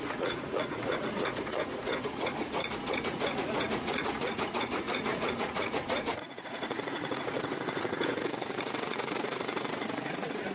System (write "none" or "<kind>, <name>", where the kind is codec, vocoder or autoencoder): vocoder, Vocos